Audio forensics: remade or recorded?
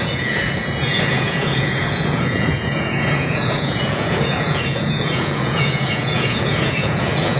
remade